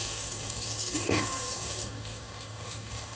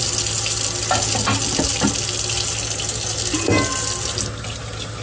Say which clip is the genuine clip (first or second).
second